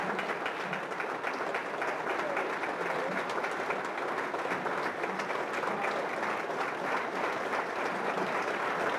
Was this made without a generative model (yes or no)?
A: yes